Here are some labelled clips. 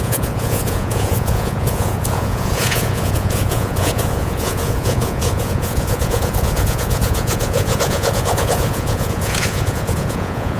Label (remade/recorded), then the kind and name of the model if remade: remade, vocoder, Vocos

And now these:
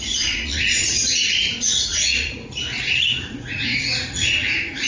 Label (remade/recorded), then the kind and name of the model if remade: remade, vocoder, Vocos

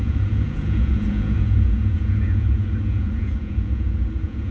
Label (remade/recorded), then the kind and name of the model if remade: remade, vocoder, Vocos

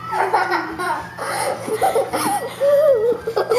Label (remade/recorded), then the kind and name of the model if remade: recorded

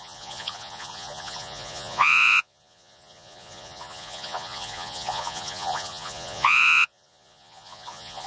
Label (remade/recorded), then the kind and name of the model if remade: remade, vocoder, Vocos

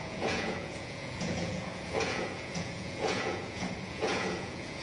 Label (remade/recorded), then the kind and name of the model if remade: remade, vocoder, Vocos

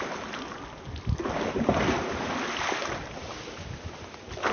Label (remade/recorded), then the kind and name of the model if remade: recorded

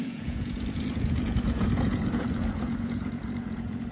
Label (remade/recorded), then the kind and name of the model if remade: remade, vocoder, Vocos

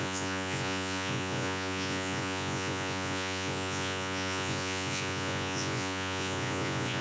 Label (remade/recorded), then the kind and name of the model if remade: remade, vocoder, Vocos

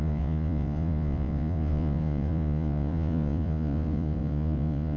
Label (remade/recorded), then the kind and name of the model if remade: remade, vocoder, Vocos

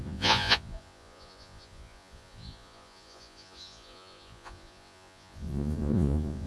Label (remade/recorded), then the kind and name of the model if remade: remade, vocoder, Vocos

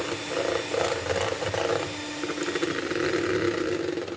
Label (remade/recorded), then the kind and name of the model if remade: recorded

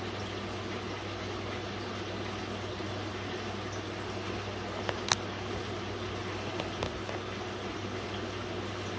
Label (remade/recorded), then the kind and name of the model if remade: recorded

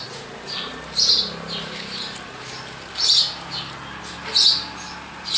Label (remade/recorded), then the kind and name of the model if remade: recorded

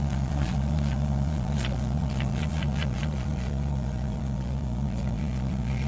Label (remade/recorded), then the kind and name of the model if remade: remade, vocoder, Vocos